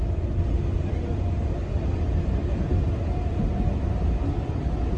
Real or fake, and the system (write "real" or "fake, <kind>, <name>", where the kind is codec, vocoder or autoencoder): real